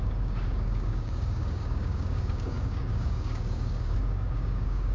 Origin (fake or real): fake